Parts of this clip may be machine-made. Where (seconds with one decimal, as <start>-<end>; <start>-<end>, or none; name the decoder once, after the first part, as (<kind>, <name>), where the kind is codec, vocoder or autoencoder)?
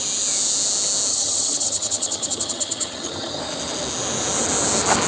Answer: 1.1-3.4 (vocoder, HiFi-GAN)